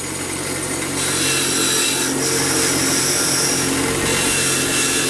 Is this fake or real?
real